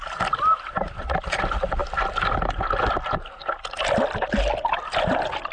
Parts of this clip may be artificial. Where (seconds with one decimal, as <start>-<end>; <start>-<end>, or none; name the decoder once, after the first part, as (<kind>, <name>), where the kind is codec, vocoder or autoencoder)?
none